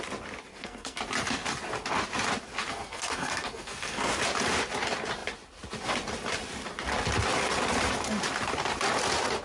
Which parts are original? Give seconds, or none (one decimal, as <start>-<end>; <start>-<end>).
0.0-0.5; 1.0-2.7; 4.2-9.4